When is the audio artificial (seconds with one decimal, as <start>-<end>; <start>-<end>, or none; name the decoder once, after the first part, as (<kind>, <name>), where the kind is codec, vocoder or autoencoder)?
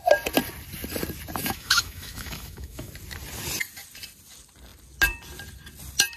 1.4-2.9 (autoencoder, DAC-VAE)